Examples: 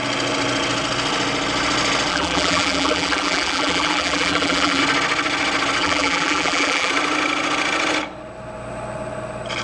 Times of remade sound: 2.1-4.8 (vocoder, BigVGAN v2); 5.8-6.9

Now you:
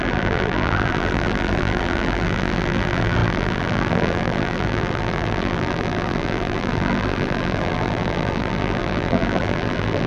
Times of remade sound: 0.0-10.1 (vocoder, BigVGAN v2)

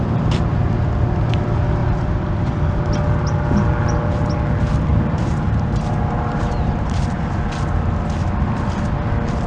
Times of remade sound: 1.8-2.5 (vocoder, BigVGAN v2); 4.9-7.4

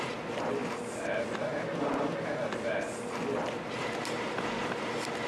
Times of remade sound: 0.0-0.6 (vocoder, BigVGAN v2); 3.7-5.3

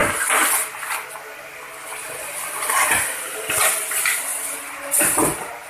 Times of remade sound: 0.0-3.4 (vocoder, BigVGAN v2); 4.3-5.7

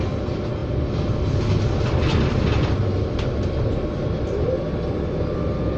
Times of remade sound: none

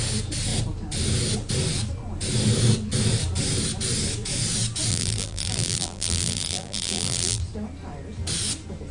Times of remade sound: 4.9-7.4 (vocoder, BigVGAN v2)